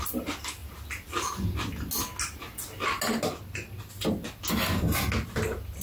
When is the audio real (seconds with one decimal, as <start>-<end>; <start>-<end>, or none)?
0.0-5.8